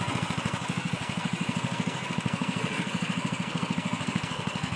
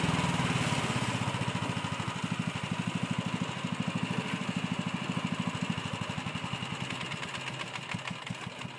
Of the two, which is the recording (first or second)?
second